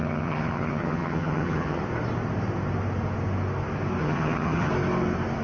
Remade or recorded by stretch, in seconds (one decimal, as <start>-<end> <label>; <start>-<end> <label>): 0.0-1.8 remade; 1.8-4.0 recorded; 4.0-4.7 remade; 4.7-5.4 recorded